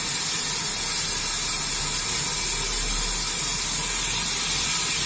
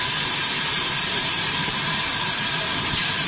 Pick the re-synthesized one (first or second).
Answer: second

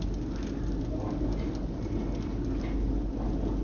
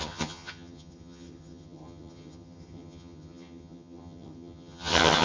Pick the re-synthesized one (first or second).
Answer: second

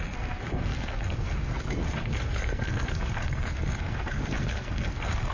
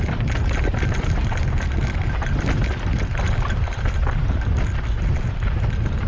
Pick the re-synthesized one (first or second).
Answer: first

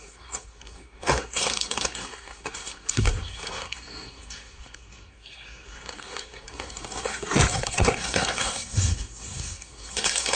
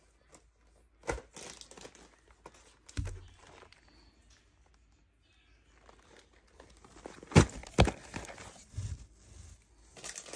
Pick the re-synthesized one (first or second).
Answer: first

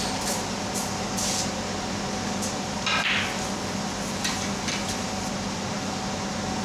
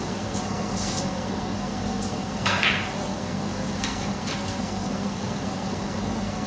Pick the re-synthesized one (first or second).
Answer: second